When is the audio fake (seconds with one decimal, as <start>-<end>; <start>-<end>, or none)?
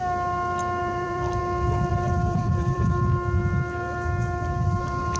0.8-1.4; 1.9-2.9